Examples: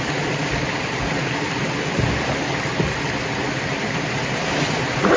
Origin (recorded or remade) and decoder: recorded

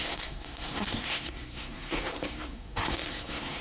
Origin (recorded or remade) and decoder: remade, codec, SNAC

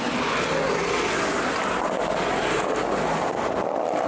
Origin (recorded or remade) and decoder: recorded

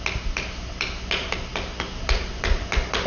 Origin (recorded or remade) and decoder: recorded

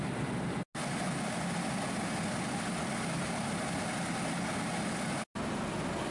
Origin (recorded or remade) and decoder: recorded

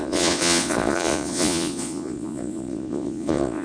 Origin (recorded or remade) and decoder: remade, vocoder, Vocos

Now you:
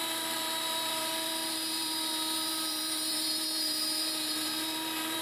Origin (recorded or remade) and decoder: remade, vocoder, BigVGAN v2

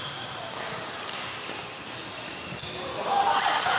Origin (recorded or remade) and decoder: recorded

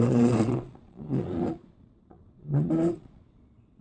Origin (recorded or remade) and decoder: remade, vocoder, Vocos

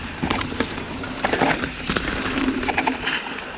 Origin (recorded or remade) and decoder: remade, vocoder, BigVGAN v2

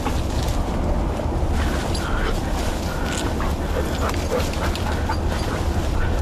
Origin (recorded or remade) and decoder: recorded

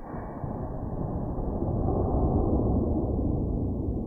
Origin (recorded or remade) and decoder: remade, vocoder, BigVGAN v2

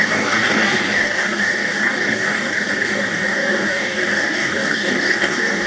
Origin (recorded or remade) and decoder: remade, codec, DAC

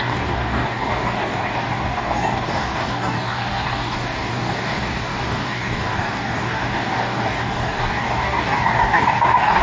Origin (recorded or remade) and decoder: remade, codec, DAC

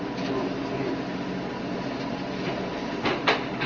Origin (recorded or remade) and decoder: recorded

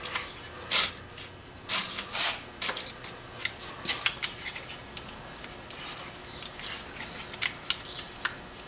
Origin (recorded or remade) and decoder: recorded